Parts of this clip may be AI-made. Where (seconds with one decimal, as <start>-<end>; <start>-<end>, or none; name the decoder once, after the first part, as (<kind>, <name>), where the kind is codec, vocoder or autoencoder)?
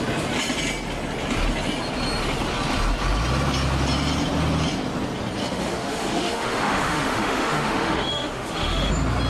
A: 5.4-8.9 (autoencoder, DAC-VAE)